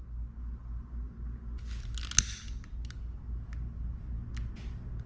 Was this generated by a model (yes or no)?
no